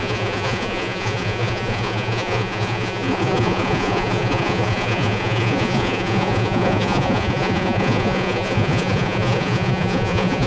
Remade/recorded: remade